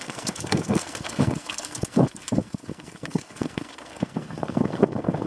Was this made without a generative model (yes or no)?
no